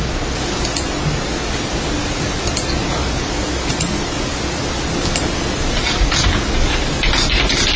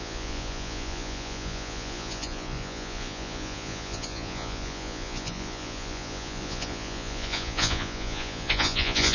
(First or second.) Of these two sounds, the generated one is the second